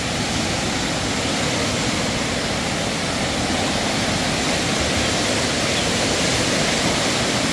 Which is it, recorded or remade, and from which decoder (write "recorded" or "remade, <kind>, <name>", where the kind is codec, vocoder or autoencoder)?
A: recorded